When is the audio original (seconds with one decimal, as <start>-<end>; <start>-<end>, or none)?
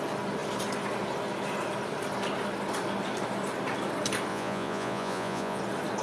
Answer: 0.0-4.3; 5.6-6.0